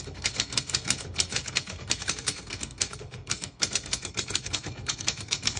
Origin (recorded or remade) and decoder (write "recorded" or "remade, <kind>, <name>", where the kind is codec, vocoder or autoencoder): remade, codec, SNAC